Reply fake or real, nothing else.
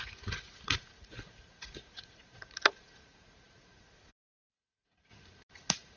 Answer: fake